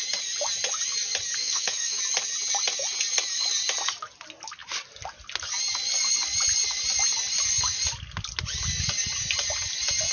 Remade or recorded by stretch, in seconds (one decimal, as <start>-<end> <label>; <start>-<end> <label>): 0.0-1.4 recorded; 1.4-2.0 remade; 2.0-10.1 recorded

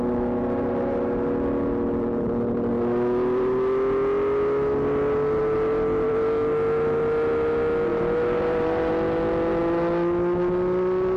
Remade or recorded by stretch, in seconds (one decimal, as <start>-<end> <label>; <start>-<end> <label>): 0.0-7.9 recorded; 7.9-8.9 remade; 8.9-11.2 recorded

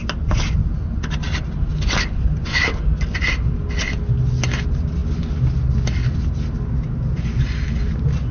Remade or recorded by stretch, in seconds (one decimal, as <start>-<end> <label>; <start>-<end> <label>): 0.0-8.3 recorded

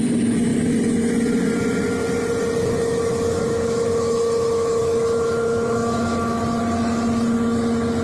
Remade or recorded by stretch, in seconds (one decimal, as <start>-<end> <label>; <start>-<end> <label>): 0.0-2.6 recorded; 2.6-6.4 remade; 6.4-8.0 recorded

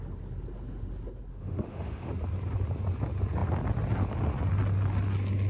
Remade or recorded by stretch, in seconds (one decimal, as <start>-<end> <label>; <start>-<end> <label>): 0.0-1.3 recorded; 1.3-2.1 remade; 2.1-5.5 recorded

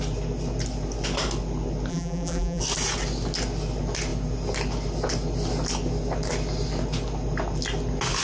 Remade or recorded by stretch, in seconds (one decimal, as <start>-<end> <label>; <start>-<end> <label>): 0.0-1.9 recorded; 1.9-2.6 remade; 2.6-8.2 recorded

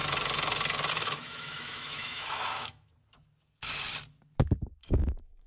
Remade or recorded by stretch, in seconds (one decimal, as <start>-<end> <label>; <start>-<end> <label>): 0.0-0.9 recorded; 0.9-2.9 remade; 2.9-4.8 recorded; 4.8-5.5 remade

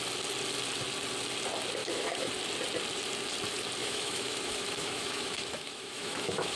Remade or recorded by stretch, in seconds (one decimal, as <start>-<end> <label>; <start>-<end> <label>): 0.0-1.8 recorded; 1.8-2.3 remade; 2.3-3.8 recorded; 3.8-6.6 remade